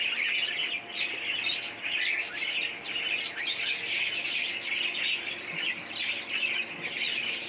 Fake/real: real